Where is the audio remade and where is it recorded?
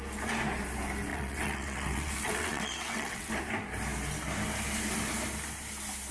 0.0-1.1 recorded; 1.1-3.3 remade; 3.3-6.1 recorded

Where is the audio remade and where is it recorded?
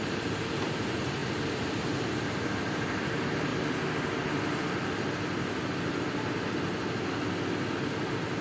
0.0-3.5 remade; 3.5-8.4 recorded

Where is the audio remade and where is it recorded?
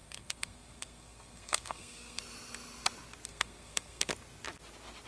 0.0-2.2 remade; 2.2-3.3 recorded; 3.3-4.1 remade; 4.1-5.1 recorded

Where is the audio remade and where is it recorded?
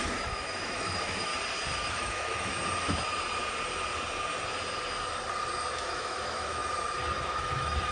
0.0-1.3 remade; 1.3-1.9 recorded; 1.9-2.5 remade; 2.5-5.8 recorded; 5.8-6.6 remade; 6.6-7.2 recorded; 7.2-7.9 remade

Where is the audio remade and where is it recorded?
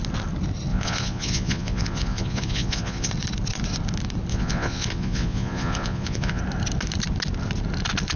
0.0-0.7 recorded; 0.7-3.1 remade; 3.1-4.3 recorded; 4.3-6.4 remade; 6.4-8.2 recorded